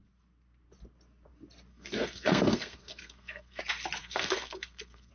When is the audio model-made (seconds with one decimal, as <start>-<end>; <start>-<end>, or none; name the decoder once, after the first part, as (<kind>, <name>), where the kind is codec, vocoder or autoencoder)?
1.7-3.6 (codec, SNAC); 4.0-5.1